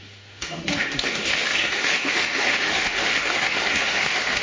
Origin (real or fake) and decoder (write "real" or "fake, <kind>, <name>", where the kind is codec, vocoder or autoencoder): fake, autoencoder, DAC-VAE